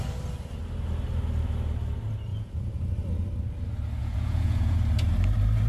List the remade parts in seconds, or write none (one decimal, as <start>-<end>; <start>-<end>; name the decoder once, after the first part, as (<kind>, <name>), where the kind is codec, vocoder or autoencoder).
2.3-2.8 (vocoder, Vocos); 4.0-4.8